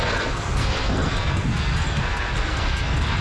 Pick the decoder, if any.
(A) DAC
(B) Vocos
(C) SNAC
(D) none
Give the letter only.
C